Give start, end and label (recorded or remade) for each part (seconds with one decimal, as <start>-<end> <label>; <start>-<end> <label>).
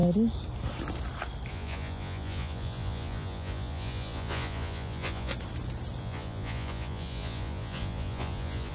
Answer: 0.0-1.5 recorded; 1.5-5.3 remade; 5.3-6.0 recorded; 6.0-8.7 remade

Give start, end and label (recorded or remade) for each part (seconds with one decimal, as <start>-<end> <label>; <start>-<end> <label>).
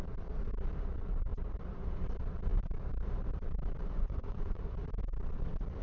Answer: 0.0-3.8 recorded; 3.8-4.6 remade; 4.6-5.8 recorded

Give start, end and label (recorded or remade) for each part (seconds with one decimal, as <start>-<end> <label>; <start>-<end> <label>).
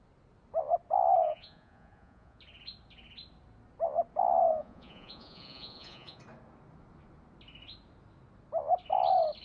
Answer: 0.0-1.2 recorded; 1.2-2.4 remade; 2.4-4.5 recorded; 4.5-6.2 remade; 6.2-9.4 recorded